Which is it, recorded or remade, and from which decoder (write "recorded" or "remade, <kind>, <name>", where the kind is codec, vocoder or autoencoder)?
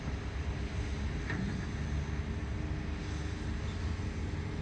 recorded